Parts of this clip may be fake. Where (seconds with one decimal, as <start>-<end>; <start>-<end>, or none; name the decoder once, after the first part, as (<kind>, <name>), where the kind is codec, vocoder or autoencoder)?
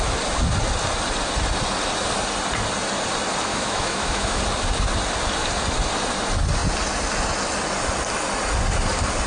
3.5-4.4 (autoencoder, DAC-VAE)